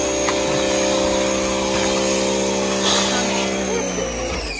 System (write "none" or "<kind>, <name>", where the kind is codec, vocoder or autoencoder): none